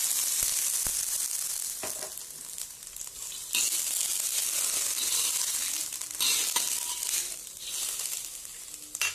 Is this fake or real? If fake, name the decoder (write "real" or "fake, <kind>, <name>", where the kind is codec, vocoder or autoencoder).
real